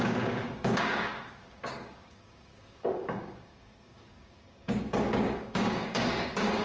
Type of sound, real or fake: fake